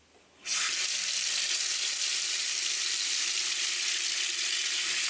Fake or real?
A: real